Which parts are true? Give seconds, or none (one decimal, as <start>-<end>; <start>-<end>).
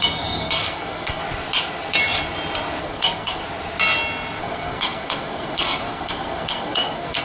1.2-2.8; 3.4-4.4